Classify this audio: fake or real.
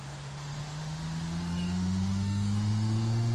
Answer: fake